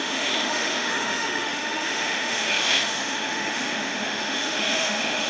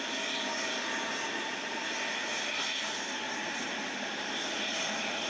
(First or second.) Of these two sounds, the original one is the second